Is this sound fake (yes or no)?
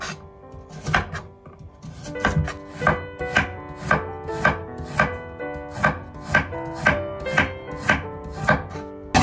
no